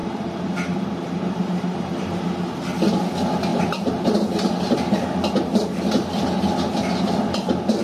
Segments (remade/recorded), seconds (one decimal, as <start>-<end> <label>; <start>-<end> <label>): 0.0-2.6 remade; 2.6-3.5 recorded; 3.5-4.6 remade; 4.6-7.8 recorded